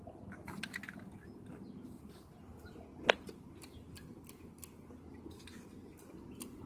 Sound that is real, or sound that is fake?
real